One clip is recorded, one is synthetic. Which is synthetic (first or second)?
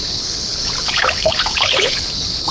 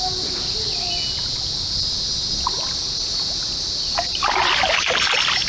first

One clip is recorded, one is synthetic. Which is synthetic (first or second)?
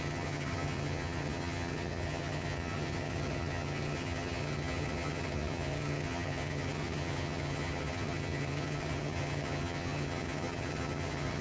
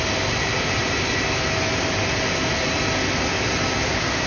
first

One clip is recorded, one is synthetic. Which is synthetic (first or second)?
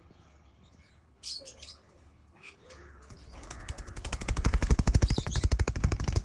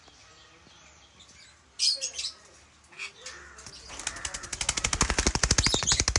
first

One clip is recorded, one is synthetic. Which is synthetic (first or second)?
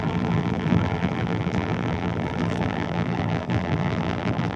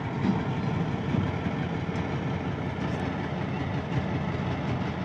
first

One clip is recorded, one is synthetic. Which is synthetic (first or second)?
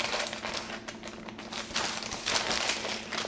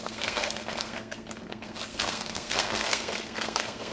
second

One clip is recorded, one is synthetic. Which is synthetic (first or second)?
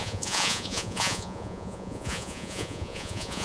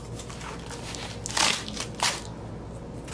first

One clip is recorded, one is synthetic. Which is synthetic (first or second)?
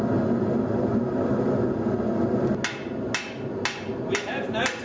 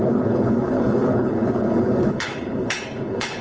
second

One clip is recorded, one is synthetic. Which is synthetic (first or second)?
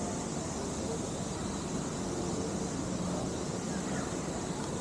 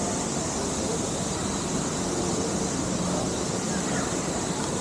second